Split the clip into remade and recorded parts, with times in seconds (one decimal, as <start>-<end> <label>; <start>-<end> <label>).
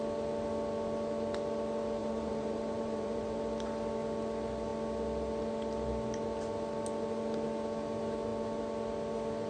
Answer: 0.0-2.0 recorded; 2.0-3.4 remade; 3.4-9.5 recorded